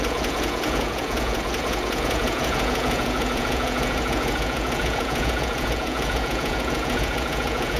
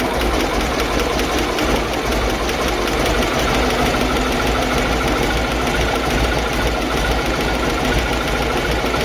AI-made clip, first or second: first